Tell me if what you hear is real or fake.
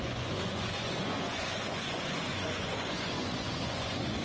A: fake